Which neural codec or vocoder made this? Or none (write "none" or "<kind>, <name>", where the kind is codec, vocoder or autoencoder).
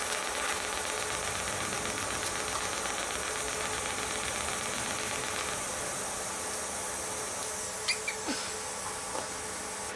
none